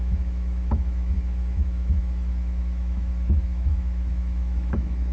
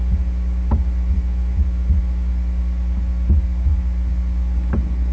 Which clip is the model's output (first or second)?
first